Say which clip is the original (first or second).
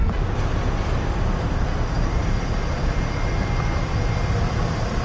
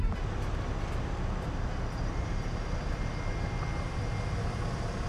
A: second